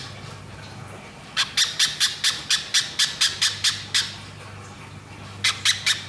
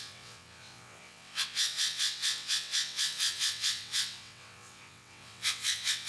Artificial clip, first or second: second